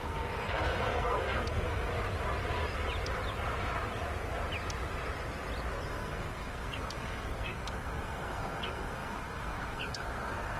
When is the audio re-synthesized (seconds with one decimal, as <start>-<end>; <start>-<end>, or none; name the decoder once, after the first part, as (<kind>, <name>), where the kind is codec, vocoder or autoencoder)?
0.0-1.9 (codec, SNAC); 5.9-10.6